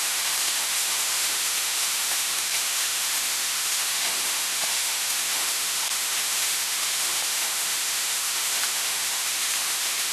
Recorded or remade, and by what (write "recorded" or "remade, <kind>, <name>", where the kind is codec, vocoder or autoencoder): remade, autoencoder, DAC-VAE